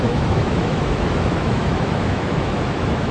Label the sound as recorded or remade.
remade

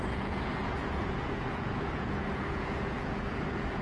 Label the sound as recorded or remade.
remade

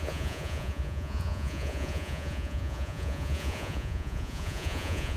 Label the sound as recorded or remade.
remade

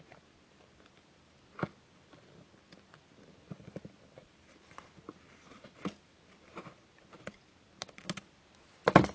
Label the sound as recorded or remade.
recorded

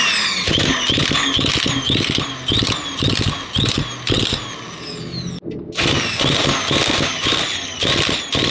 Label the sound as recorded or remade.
recorded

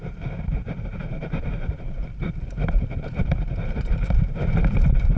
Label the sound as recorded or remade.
remade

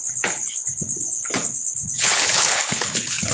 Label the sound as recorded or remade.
remade